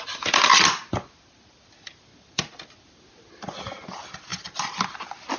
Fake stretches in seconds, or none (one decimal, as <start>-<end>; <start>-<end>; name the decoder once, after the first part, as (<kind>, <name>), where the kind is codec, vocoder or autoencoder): none